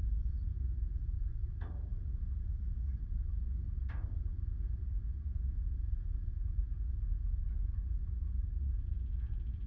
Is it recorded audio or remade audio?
remade